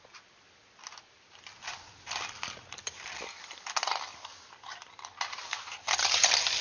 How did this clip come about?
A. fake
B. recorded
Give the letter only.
B